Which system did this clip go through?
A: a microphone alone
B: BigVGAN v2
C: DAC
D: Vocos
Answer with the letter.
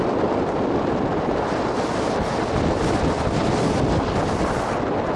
B